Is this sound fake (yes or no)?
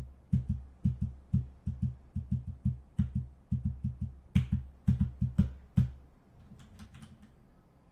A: no